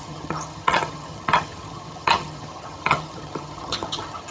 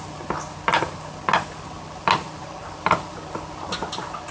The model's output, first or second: first